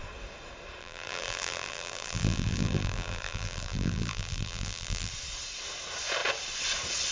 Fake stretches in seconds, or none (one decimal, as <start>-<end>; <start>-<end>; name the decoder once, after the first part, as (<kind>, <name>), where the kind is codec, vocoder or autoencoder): 0.8-5.1 (vocoder, BigVGAN v2)